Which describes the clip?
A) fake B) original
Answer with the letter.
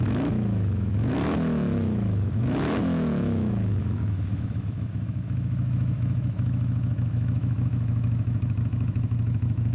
A